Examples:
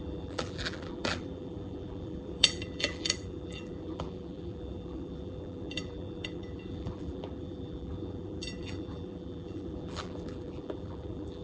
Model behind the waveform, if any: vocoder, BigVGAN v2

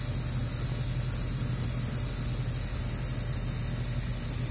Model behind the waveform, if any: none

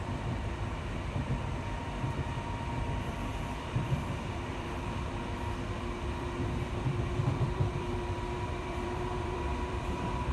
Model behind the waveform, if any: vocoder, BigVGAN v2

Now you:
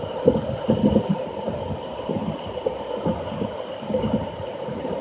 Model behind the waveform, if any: vocoder, BigVGAN v2